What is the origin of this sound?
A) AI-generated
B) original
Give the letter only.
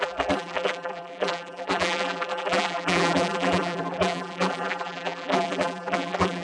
A